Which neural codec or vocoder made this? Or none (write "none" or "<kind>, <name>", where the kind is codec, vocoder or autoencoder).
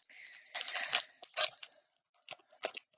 none